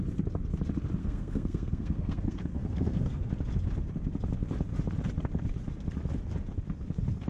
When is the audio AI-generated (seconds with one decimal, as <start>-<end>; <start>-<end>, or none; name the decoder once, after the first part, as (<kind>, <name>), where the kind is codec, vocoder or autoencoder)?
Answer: 1.0-3.3 (codec, SNAC)